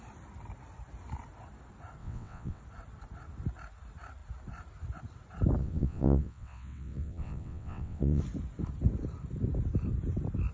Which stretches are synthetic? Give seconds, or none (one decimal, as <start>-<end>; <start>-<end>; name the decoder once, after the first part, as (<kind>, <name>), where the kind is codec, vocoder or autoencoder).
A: 2.0-2.6 (vocoder, WaveNeXt); 5.6-8.2